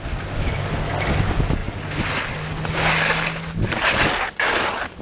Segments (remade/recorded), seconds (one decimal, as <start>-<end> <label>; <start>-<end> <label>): 0.0-5.0 recorded